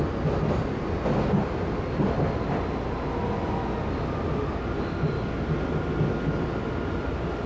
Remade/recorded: recorded